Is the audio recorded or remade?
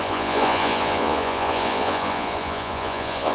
remade